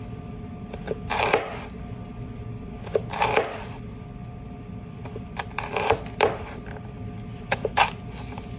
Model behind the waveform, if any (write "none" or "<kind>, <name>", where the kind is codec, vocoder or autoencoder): none